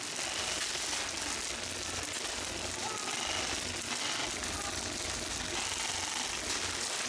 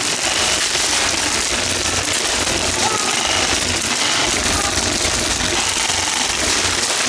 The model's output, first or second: second